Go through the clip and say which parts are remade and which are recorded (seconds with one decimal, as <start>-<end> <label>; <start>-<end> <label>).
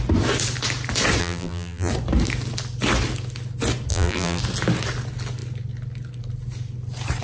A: 0.0-1.2 recorded; 1.2-1.9 remade; 1.9-3.9 recorded; 3.9-4.4 remade; 4.4-7.2 recorded